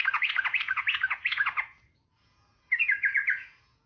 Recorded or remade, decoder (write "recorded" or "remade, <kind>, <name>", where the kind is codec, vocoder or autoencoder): remade, vocoder, Vocos